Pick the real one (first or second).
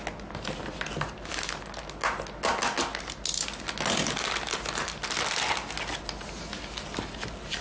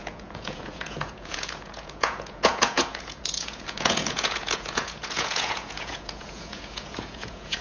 first